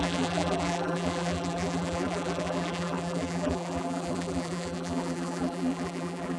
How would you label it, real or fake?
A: fake